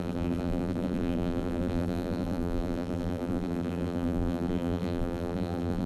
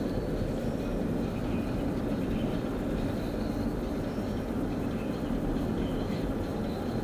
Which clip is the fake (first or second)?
first